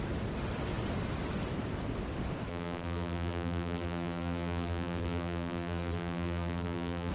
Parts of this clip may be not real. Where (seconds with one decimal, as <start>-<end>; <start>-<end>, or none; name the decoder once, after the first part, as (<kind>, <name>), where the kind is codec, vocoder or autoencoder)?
2.5-7.1 (vocoder, BigVGAN v2)